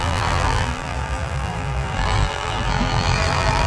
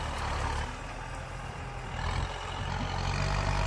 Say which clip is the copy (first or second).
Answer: first